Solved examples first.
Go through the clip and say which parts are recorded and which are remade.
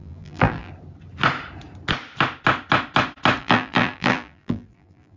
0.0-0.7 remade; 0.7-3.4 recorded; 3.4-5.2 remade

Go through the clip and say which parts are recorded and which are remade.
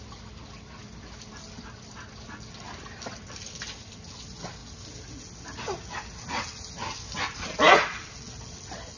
0.0-9.0 recorded